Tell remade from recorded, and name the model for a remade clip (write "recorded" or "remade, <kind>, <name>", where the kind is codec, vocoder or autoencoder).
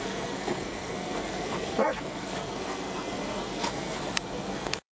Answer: remade, codec, SNAC